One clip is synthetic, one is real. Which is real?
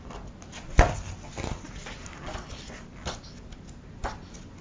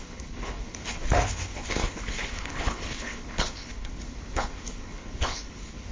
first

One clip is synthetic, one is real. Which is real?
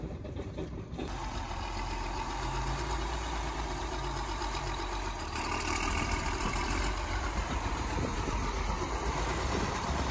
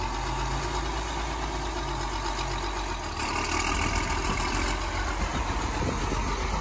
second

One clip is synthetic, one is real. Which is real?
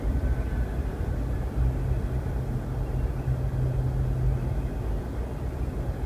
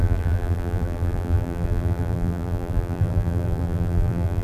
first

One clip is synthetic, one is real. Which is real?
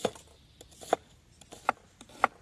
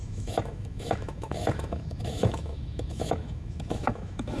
first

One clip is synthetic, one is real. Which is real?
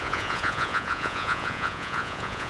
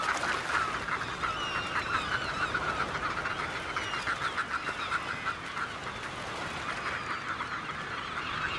second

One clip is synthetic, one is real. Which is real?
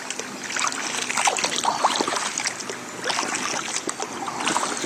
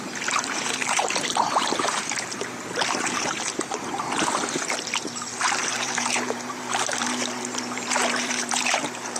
first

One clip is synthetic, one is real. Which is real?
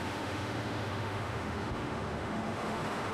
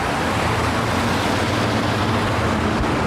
second